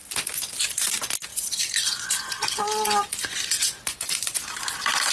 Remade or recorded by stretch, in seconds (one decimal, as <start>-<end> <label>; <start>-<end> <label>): 0.0-1.3 recorded; 1.3-4.4 remade; 4.4-5.1 recorded